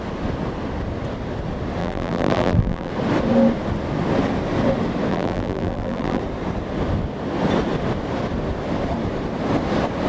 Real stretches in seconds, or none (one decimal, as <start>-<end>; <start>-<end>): 0.0-1.8; 2.9-5.1; 6.2-10.1